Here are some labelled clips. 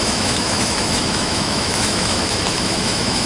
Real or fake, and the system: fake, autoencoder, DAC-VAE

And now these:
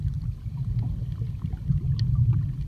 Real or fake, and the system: real